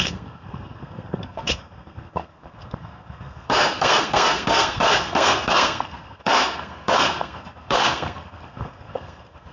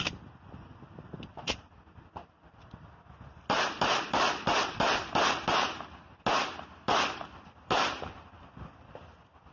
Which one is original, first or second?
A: second